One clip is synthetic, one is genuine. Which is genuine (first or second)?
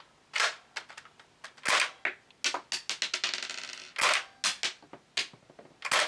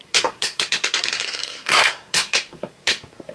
first